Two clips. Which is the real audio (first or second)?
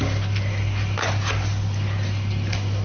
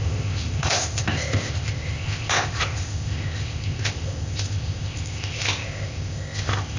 first